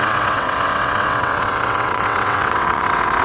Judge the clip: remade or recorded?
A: remade